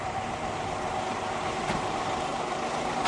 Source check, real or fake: real